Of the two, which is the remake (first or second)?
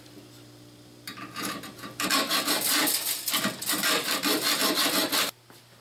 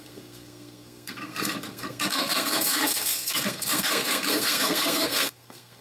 second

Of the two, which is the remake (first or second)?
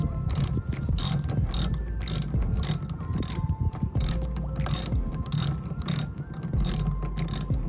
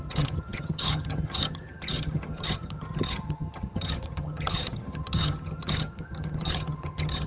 second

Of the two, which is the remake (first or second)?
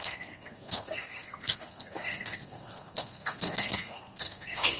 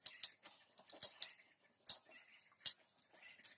first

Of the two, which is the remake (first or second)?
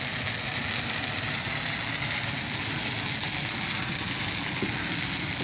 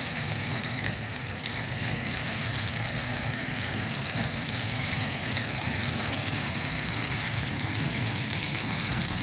second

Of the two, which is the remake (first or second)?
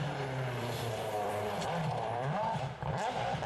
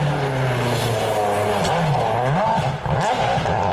first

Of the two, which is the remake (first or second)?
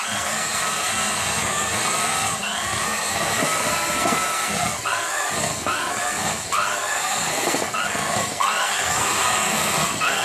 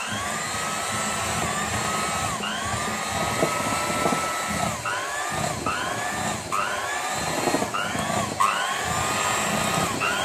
first